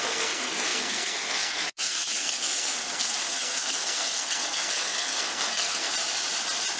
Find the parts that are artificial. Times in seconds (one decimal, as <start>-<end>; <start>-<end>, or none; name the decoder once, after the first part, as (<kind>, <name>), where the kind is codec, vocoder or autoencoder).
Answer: 0.0-5.9 (codec, SNAC)